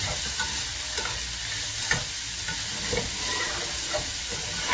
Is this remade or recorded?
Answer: recorded